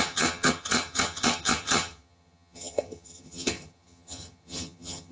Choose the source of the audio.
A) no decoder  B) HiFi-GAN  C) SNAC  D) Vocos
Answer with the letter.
B